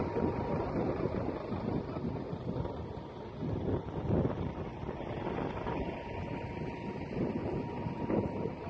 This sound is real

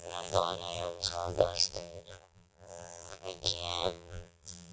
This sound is fake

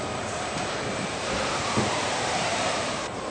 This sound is fake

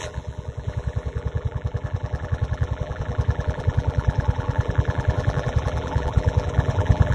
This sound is fake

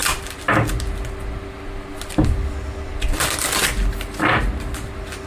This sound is real